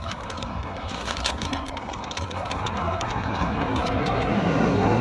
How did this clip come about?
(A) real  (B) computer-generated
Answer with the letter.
B